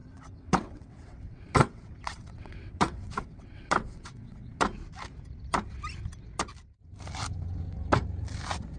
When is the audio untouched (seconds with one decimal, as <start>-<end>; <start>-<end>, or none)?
4.6-8.8